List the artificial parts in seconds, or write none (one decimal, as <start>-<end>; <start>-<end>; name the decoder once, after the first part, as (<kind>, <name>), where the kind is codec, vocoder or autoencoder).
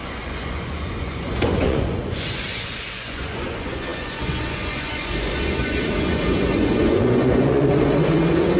0.0-8.6 (vocoder, Vocos)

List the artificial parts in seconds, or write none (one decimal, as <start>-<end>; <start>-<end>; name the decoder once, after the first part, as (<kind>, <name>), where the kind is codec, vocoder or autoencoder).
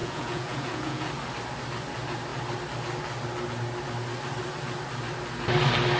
0.0-1.1 (vocoder, Vocos)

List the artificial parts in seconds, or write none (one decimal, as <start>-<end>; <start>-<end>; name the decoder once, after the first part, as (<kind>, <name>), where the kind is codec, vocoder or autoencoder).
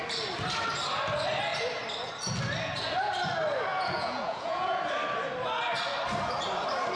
3.7-4.8 (vocoder, Vocos)